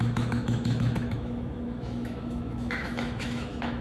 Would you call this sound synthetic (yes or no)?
yes